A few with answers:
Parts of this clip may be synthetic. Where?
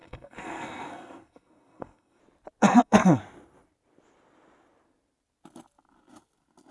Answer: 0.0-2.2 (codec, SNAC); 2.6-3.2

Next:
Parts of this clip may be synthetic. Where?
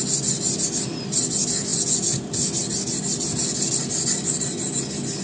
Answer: none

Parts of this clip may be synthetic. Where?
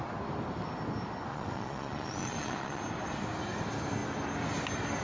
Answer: 1.3-2.8 (vocoder, Vocos)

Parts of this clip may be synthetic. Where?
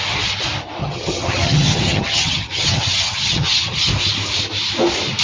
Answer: 0.8-3.9 (vocoder, HiFi-GAN)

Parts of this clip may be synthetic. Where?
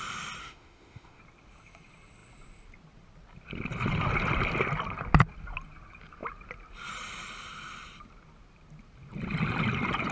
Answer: 0.4-1.2 (autoencoder, DAC-VAE)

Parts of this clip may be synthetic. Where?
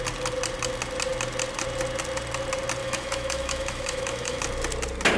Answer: 2.8-4.4 (autoencoder, DAC-VAE)